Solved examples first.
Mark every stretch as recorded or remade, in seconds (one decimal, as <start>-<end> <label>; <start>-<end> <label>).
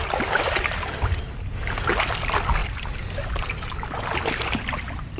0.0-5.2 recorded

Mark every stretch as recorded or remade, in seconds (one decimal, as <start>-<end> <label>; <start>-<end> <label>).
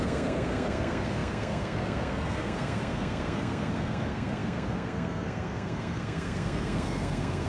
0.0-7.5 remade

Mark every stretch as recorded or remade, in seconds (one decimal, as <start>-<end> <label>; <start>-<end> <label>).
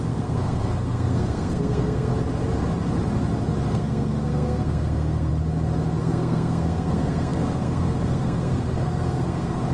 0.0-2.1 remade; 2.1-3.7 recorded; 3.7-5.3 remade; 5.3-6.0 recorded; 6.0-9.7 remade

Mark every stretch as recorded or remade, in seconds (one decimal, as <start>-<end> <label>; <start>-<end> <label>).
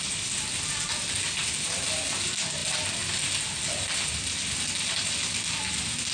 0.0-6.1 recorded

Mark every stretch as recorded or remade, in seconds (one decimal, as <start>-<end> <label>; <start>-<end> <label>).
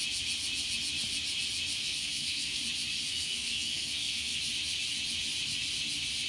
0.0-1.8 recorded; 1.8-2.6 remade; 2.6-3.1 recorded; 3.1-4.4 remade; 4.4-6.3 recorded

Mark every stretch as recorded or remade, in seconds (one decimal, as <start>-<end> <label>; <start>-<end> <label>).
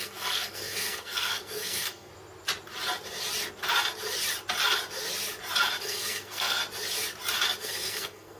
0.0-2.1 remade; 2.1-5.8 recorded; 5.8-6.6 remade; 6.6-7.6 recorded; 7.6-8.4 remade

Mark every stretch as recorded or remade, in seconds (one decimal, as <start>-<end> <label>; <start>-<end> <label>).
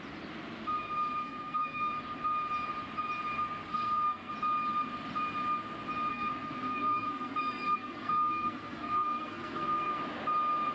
0.0-1.2 recorded; 1.2-1.9 remade; 1.9-3.7 recorded; 3.7-4.3 remade; 4.3-6.1 recorded; 6.1-10.0 remade; 10.0-10.7 recorded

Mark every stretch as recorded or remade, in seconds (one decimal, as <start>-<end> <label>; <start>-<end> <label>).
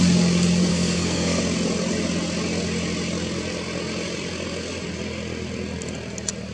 0.0-0.7 recorded; 0.7-1.4 remade; 1.4-6.5 recorded